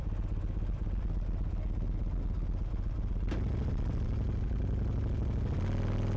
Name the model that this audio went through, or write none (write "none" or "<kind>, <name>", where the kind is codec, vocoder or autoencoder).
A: none